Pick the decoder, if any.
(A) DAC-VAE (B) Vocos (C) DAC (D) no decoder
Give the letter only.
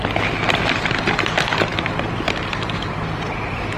D